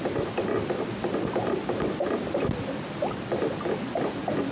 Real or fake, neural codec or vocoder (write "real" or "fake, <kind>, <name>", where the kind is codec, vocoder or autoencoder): real